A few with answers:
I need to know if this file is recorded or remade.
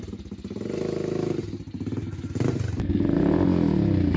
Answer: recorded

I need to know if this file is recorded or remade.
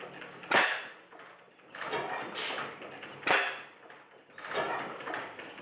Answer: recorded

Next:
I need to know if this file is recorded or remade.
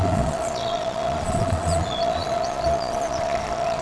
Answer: remade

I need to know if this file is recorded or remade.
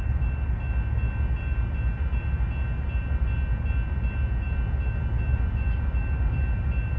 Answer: recorded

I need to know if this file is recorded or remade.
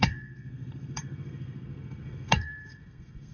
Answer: remade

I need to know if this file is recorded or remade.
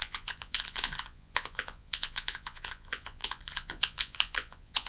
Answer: remade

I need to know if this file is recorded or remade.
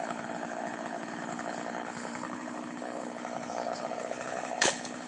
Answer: remade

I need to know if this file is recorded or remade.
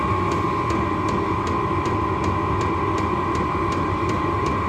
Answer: recorded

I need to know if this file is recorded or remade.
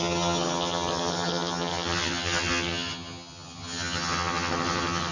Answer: remade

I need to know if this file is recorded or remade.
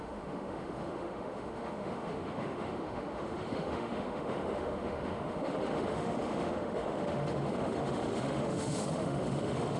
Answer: remade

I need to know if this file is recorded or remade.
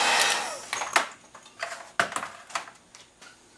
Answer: recorded